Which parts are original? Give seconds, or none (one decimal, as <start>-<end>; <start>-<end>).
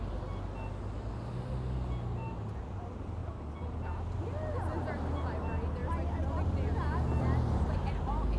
0.0-8.4